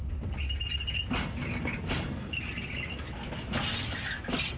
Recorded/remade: recorded